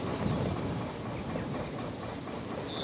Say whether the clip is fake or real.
real